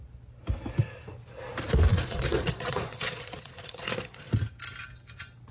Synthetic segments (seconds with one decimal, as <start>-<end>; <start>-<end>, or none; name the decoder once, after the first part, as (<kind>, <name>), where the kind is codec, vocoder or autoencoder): 1.9-4.3 (vocoder, Vocos)